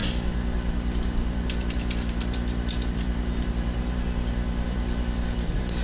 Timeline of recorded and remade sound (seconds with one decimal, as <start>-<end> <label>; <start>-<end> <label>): 0.0-5.8 recorded